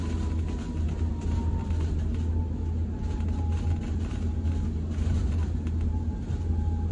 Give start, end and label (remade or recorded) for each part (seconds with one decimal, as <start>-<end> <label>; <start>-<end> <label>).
0.0-6.9 recorded